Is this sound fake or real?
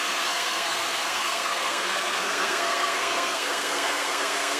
fake